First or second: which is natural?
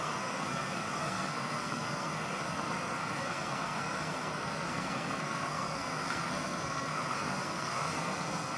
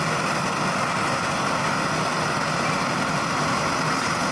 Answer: second